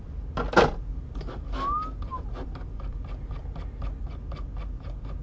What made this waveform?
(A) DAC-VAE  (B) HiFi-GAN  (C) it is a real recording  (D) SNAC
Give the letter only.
C